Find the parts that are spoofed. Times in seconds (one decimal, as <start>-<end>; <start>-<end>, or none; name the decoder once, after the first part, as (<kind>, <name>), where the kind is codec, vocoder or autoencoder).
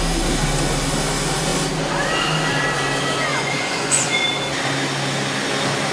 3.3-4.2 (vocoder, Vocos)